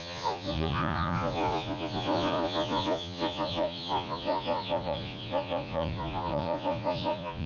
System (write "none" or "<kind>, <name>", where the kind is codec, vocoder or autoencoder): vocoder, Vocos